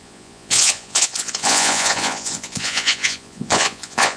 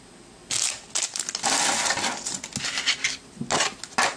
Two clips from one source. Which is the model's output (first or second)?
first